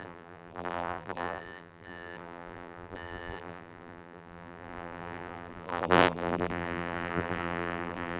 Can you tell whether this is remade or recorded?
remade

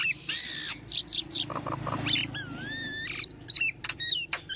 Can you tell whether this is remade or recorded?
remade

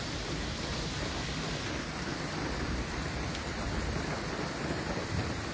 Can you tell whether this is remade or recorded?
recorded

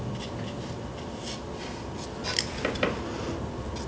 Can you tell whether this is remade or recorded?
recorded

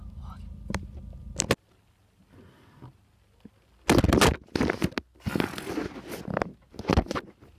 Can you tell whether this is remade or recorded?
recorded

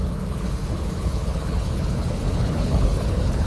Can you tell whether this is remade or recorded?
remade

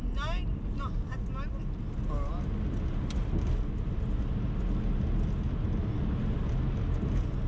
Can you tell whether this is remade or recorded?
recorded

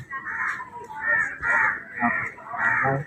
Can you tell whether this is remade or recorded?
recorded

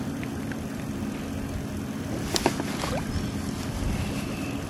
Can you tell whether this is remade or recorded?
recorded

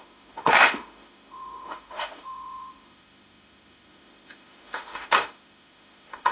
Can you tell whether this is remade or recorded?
remade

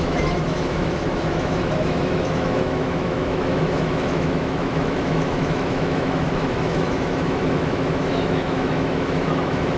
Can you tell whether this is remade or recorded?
remade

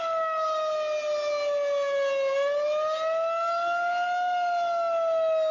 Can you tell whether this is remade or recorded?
recorded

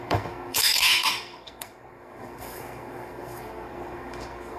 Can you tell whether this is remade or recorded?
remade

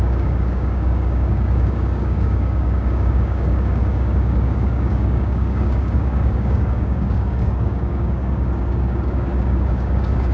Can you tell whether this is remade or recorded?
remade